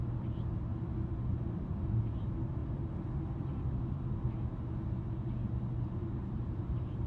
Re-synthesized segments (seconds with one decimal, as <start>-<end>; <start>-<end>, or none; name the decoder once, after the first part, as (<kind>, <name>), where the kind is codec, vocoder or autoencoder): 6.0-7.1 (vocoder, BigVGAN v2)